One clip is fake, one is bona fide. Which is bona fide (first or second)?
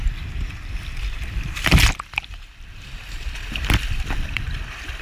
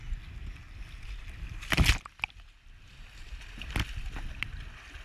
second